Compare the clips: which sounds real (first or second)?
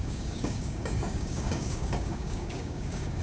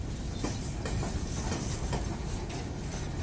second